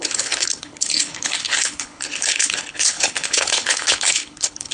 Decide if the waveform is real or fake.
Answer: fake